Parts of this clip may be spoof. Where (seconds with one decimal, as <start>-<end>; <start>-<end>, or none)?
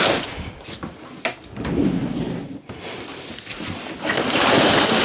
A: 1.8-5.0